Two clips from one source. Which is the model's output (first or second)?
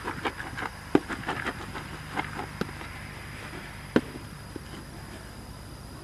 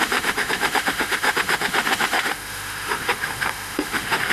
second